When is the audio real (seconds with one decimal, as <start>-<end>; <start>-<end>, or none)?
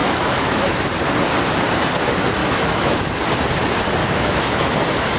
0.9-2.4; 3.1-4.0; 4.7-5.2